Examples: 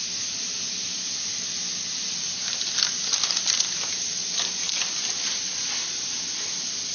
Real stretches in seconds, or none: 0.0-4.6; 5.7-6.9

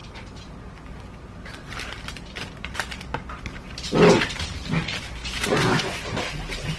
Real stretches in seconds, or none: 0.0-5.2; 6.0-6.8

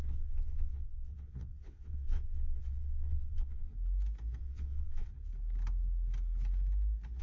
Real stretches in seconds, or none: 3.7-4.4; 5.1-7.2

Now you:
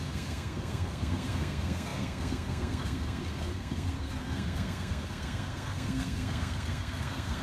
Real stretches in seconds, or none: none

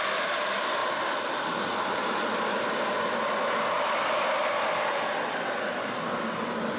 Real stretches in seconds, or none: 0.0-6.8